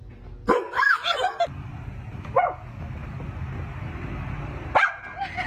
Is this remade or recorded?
recorded